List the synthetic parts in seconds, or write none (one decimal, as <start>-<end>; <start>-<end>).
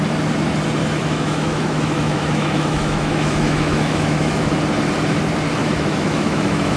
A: 0.8-4.5; 5.6-6.8